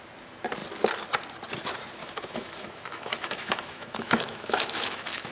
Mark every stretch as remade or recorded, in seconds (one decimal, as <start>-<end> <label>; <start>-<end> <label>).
0.0-2.0 recorded; 2.0-5.3 remade